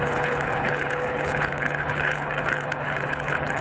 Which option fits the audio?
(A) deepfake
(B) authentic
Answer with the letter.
A